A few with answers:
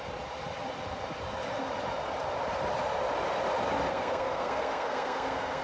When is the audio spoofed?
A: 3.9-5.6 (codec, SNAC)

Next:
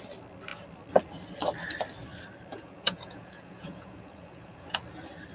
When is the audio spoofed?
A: 2.5-4.8 (vocoder, Vocos)

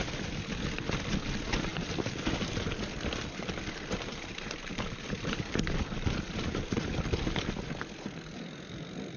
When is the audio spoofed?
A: 4.1-7.0 (vocoder, BigVGAN v2)